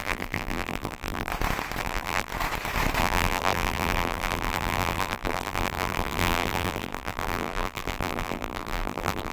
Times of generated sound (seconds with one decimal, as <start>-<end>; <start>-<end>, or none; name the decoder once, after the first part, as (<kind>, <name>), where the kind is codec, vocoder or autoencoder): 0.0-1.3 (vocoder, BigVGAN v2); 1.8-2.3; 3.0-9.3